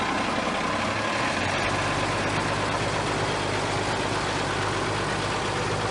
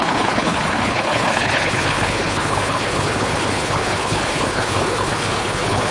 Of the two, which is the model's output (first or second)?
second